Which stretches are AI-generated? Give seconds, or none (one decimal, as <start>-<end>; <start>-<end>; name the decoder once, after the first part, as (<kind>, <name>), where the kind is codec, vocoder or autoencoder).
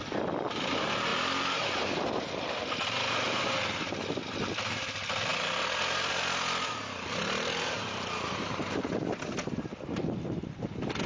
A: none